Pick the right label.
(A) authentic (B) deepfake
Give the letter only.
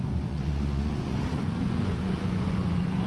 B